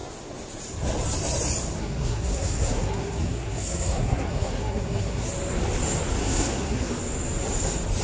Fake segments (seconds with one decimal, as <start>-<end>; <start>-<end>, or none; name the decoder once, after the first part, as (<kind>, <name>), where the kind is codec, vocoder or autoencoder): 1.8-5.3 (codec, SNAC); 6.2-6.9